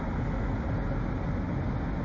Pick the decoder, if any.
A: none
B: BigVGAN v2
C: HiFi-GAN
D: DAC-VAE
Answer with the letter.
A